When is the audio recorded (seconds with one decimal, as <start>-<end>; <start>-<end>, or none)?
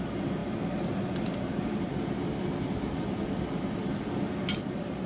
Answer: 0.0-5.1